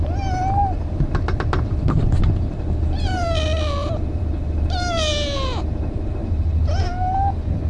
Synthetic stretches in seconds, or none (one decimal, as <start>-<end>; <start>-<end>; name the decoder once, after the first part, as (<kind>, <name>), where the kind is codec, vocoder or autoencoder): none